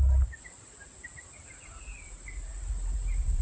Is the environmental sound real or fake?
fake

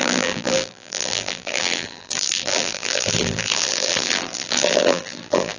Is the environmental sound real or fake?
fake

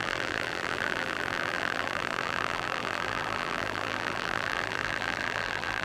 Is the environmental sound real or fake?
fake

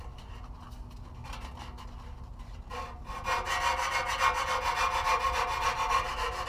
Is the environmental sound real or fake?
real